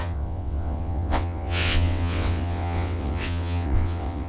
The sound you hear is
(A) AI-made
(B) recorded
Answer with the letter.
A